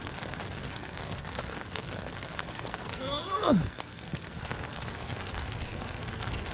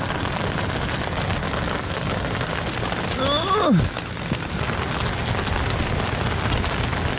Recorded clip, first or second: second